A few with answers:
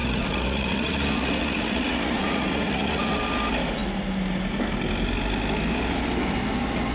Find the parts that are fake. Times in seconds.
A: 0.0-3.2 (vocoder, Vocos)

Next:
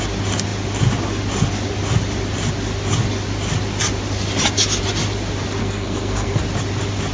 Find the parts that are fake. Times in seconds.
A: 5.6-6.4 (codec, SNAC)

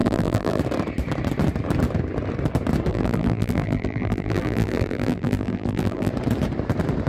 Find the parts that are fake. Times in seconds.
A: 0.0-0.6 (vocoder, BigVGAN v2); 2.9-6.1

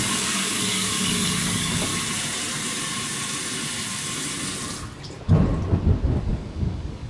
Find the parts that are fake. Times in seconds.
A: 0.0-1.9 (codec, DAC); 6.2-7.1

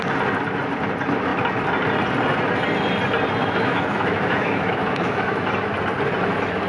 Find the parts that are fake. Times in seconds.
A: 3.4-5.5 (autoencoder, DAC-VAE)